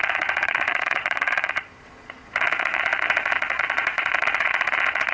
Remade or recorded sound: remade